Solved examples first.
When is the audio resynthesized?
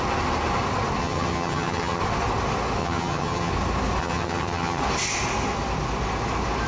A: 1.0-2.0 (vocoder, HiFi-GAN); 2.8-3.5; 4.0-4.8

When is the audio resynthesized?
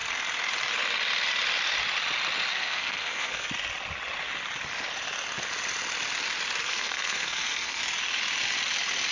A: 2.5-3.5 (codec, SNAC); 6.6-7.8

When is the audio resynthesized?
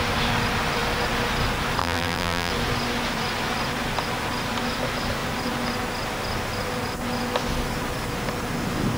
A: 1.8-2.5 (vocoder, BigVGAN v2)